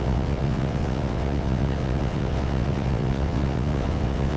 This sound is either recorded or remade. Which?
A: remade